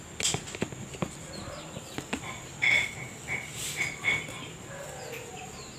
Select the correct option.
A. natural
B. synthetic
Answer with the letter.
A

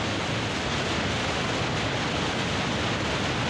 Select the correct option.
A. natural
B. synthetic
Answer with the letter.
A